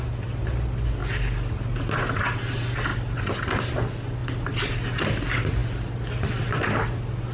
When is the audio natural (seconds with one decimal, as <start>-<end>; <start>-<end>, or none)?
0.0-7.3